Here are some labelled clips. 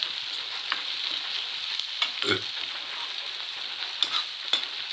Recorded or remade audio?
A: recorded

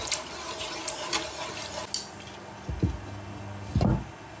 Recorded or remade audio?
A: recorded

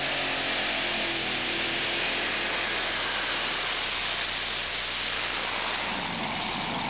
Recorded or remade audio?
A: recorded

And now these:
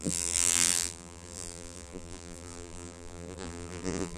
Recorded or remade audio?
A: remade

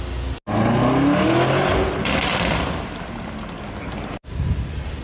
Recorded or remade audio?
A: recorded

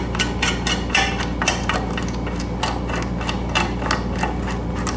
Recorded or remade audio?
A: recorded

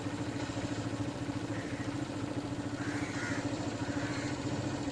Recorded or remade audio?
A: recorded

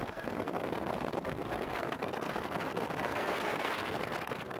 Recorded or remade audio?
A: remade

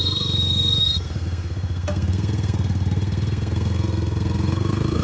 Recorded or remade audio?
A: remade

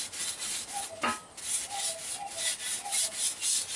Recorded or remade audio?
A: recorded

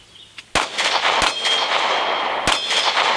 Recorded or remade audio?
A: recorded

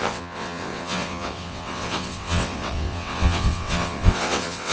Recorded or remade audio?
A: remade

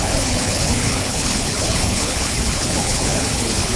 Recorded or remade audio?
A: remade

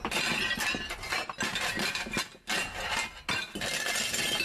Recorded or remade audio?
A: recorded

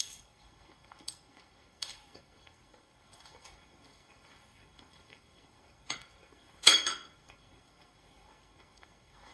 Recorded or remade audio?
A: remade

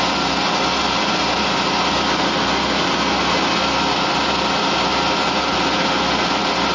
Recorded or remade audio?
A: recorded